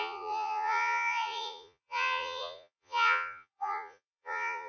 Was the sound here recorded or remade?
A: remade